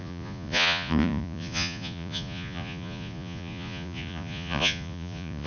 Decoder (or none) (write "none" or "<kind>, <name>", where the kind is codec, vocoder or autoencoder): vocoder, Vocos